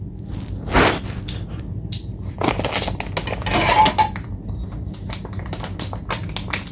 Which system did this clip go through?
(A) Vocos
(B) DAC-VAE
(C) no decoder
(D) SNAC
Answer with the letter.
C